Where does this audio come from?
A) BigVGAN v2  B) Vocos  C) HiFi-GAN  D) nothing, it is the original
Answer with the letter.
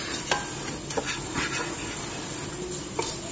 D